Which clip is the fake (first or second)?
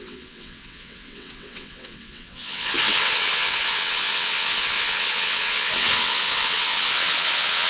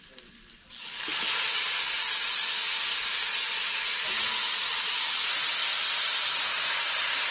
first